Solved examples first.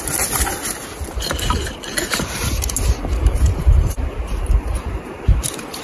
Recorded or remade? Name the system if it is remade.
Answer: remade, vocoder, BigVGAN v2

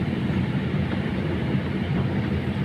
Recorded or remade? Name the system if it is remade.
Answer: remade, vocoder, BigVGAN v2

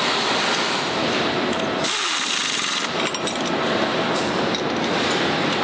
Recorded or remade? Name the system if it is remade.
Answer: recorded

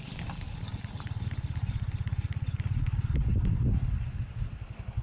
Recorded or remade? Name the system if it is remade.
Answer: recorded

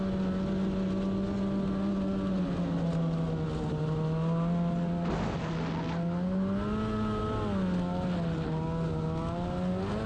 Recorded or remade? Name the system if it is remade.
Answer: recorded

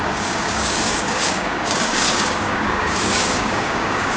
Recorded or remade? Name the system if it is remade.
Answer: remade, codec, DAC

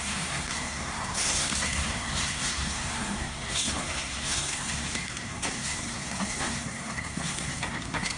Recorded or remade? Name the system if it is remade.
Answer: remade, codec, SNAC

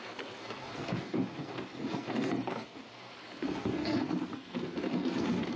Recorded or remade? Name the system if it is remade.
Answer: remade, codec, SNAC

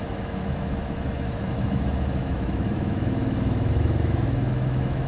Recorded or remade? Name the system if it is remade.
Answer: remade, autoencoder, DAC-VAE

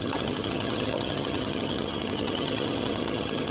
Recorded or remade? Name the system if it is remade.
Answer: remade, vocoder, HiFi-GAN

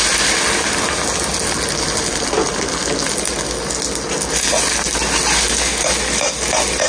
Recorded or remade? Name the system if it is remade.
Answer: recorded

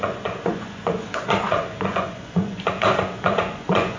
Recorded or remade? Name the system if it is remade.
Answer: remade, vocoder, Vocos